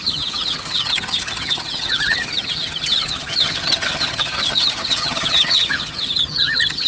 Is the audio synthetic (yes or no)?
yes